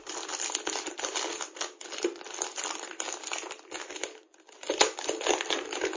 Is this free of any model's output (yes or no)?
no